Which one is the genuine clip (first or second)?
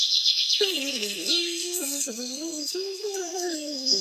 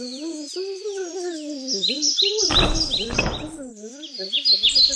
second